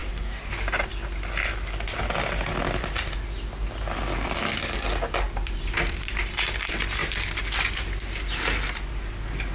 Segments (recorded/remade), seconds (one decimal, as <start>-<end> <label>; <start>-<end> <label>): 0.0-0.5 remade; 0.5-9.5 recorded